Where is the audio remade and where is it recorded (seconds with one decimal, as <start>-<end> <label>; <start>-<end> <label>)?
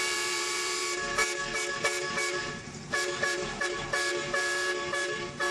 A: 0.0-1.2 remade; 1.2-1.7 recorded; 1.7-5.5 remade